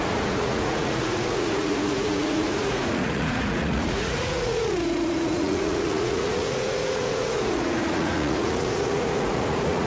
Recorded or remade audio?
remade